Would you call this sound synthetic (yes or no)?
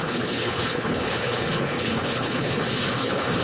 yes